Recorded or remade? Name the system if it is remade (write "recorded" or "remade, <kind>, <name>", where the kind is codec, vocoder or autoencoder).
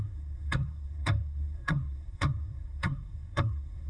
remade, codec, SNAC